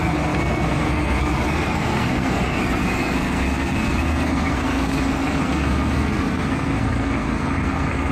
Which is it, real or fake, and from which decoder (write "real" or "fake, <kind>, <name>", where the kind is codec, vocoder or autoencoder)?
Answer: fake, codec, SNAC